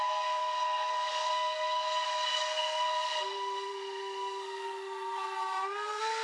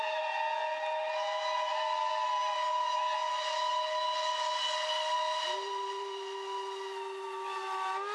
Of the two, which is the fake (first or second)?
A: first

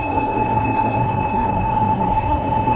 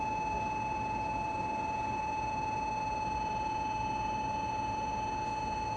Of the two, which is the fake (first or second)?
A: first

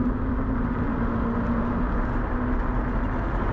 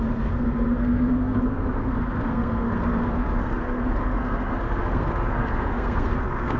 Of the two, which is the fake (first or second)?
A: second